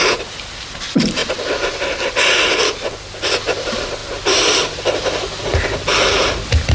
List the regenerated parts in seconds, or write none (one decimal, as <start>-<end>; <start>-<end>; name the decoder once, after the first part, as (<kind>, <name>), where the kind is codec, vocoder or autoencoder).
none